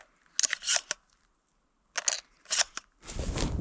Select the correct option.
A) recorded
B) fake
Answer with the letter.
A